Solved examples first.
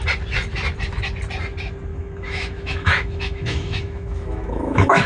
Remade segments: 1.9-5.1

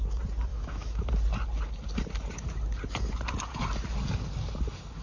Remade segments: 0.5-1.1

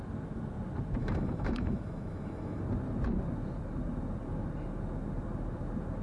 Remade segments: 1.0-2.6

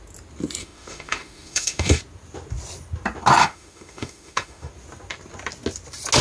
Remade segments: 0.6-2.0; 3.4-4.7